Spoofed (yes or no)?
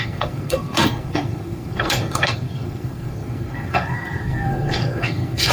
yes